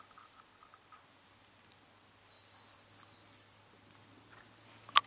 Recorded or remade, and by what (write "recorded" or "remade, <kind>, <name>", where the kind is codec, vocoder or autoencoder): recorded